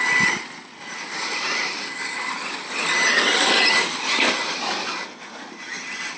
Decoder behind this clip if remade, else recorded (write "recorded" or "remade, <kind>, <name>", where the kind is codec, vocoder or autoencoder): recorded